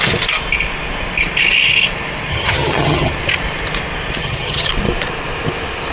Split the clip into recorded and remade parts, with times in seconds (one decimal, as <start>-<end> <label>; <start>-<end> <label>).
0.0-2.3 recorded; 2.3-3.1 remade; 3.1-4.2 recorded; 4.2-4.7 remade; 4.7-5.9 recorded